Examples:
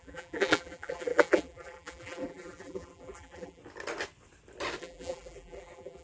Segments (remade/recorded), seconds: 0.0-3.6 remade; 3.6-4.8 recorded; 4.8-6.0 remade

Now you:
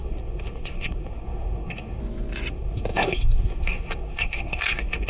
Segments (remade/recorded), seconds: 0.0-2.0 remade; 2.0-2.5 recorded; 2.5-5.1 remade